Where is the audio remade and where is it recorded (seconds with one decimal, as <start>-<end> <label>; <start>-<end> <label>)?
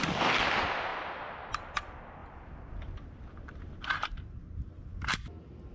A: 0.0-5.7 recorded